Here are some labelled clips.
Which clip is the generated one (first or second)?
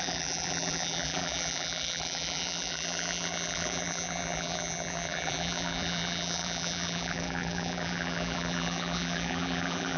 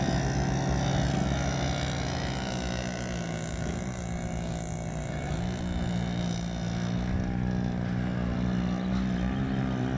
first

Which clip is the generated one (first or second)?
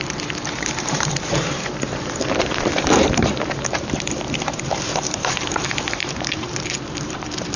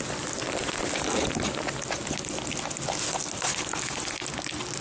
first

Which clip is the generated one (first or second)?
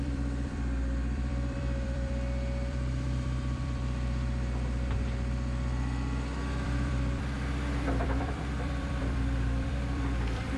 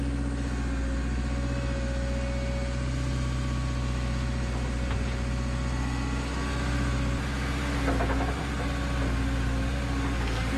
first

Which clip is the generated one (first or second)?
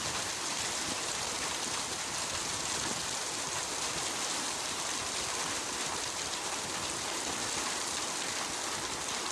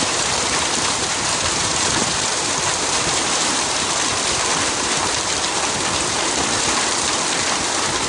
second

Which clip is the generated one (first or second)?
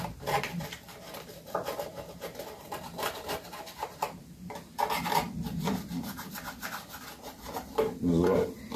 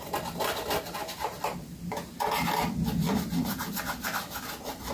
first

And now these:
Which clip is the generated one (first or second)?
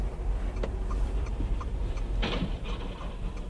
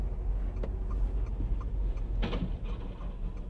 first